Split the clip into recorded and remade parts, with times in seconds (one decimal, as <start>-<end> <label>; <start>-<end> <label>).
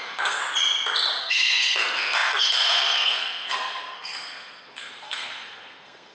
0.0-0.4 remade; 0.4-1.2 recorded; 1.2-6.1 remade